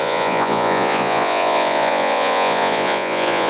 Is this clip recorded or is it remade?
remade